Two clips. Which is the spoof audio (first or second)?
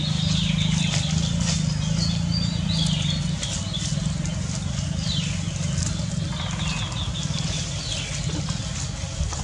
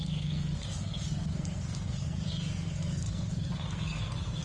second